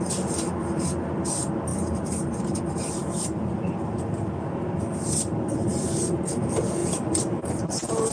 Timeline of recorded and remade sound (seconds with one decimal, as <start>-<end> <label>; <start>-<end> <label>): 0.0-1.7 recorded; 1.7-2.6 remade; 2.6-3.0 recorded; 3.0-3.6 remade; 3.6-6.8 recorded; 6.8-8.1 remade